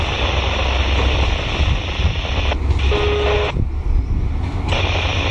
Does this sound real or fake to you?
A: real